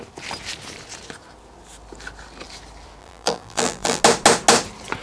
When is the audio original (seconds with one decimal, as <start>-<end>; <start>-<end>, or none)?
0.0-3.0; 4.0-5.0